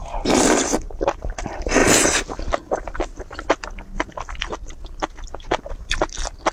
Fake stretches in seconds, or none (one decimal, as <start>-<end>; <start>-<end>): none